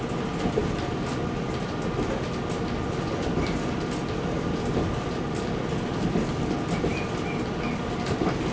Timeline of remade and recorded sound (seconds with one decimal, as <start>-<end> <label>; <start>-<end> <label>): 0.0-8.5 recorded

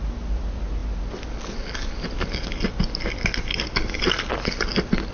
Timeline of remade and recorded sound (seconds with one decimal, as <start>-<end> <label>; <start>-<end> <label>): 0.0-5.1 recorded

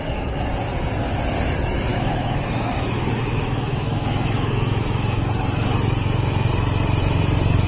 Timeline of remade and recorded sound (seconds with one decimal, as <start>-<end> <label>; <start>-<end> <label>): 0.0-1.9 recorded; 1.9-5.3 remade; 5.3-7.7 recorded

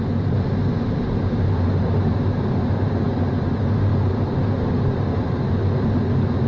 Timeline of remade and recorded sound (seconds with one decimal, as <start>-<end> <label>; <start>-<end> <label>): 0.0-6.5 recorded

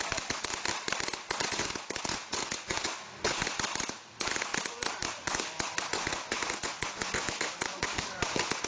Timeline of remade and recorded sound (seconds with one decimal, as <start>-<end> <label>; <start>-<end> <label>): 0.0-0.5 remade; 0.5-1.1 recorded; 1.1-4.5 remade; 4.5-5.2 recorded; 5.2-8.7 remade

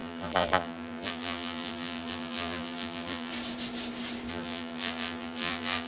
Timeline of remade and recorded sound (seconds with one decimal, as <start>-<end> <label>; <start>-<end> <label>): 0.0-3.3 remade; 3.3-4.3 recorded; 4.3-5.9 remade

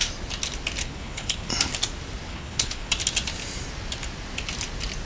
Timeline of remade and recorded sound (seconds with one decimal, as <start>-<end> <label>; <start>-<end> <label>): 0.0-0.8 recorded; 0.8-1.5 remade; 1.5-2.3 recorded; 2.3-2.9 remade; 2.9-5.1 recorded